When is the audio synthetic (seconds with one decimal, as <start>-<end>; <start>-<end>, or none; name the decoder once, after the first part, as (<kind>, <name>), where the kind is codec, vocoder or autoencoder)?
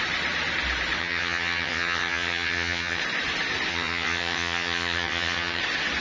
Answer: 1.0-3.0 (vocoder, HiFi-GAN); 3.7-5.6